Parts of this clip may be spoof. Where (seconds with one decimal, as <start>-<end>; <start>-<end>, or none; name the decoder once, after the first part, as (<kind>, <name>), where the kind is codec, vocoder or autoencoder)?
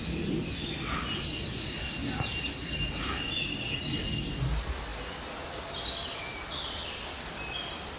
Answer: none